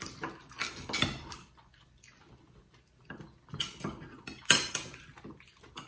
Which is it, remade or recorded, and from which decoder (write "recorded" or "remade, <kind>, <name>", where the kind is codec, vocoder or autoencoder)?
recorded